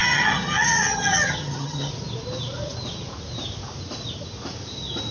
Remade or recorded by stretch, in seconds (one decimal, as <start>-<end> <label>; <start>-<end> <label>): 0.0-1.9 remade; 1.9-5.1 recorded

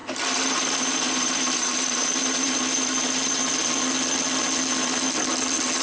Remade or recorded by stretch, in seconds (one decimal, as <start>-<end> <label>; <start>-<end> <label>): 0.0-3.5 remade; 3.5-5.8 recorded

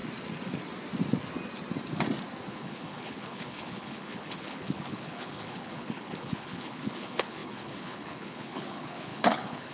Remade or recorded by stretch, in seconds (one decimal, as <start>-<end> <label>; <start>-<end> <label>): 0.0-2.5 recorded; 2.5-9.7 remade

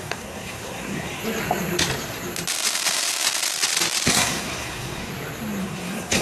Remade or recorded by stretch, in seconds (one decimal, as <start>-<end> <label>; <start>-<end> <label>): 0.0-1.2 remade; 1.2-4.1 recorded; 4.1-5.1 remade; 5.1-5.6 recorded; 5.6-6.2 remade

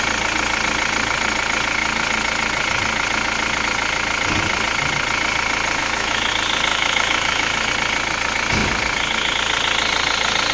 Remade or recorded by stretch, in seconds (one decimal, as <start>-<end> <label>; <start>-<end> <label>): 0.0-5.8 recorded; 5.8-6.3 remade; 6.3-6.7 recorded; 6.7-7.7 remade; 7.7-10.5 recorded